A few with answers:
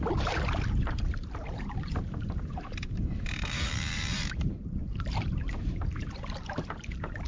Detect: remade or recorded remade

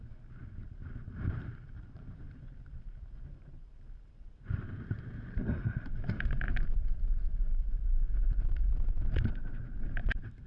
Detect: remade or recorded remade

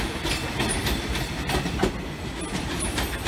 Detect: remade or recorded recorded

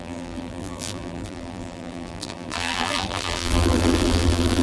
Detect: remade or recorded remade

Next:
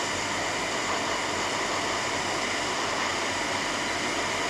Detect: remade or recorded recorded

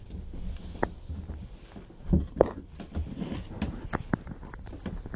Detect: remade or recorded recorded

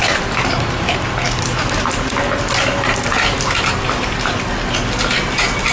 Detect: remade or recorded recorded